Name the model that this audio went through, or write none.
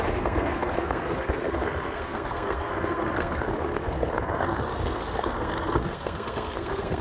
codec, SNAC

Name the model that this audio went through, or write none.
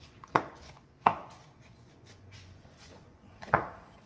vocoder, Vocos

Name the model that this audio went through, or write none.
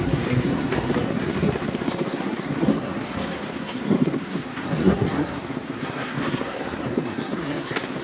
codec, SNAC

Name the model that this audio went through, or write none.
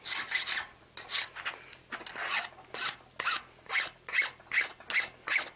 none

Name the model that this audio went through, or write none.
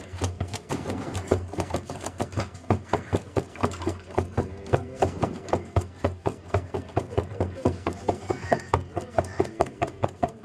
codec, SNAC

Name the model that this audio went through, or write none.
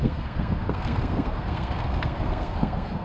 codec, SNAC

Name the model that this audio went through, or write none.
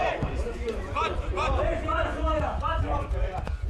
vocoder, Vocos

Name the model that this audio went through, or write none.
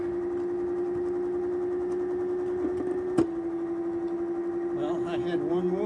none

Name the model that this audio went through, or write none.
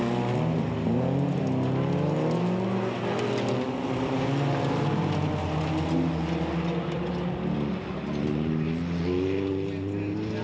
none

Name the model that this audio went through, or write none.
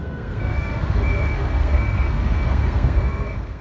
codec, SNAC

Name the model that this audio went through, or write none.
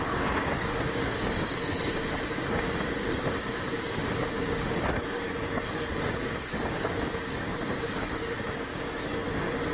codec, DAC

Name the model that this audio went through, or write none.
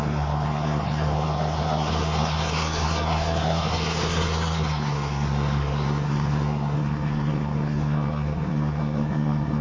codec, SNAC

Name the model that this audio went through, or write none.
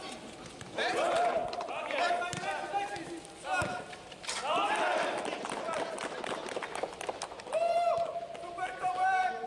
none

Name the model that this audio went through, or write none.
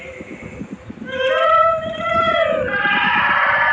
none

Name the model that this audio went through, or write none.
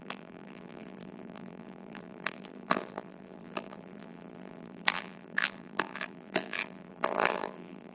vocoder, BigVGAN v2